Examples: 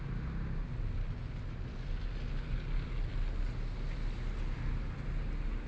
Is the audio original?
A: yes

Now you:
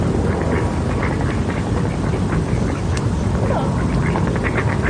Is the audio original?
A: yes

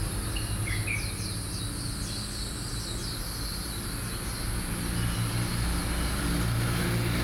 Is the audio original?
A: yes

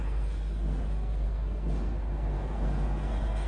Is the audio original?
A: no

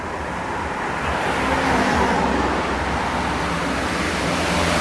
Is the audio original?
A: yes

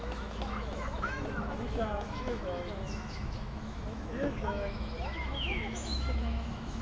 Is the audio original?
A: no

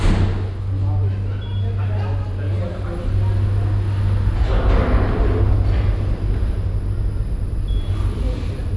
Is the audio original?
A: yes